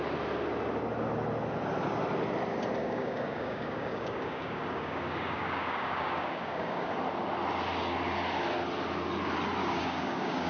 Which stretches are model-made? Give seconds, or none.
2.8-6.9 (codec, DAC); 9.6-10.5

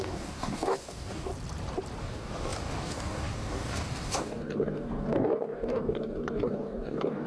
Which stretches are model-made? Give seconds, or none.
0.0-1.3 (codec, DAC); 2.0-7.3

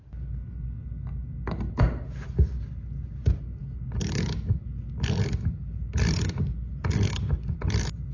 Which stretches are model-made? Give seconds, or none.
none

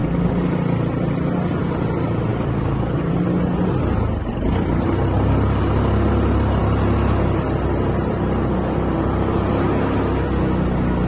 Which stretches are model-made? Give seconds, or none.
2.3-3.1 (codec, DAC)

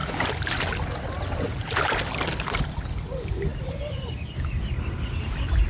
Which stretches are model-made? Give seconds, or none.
none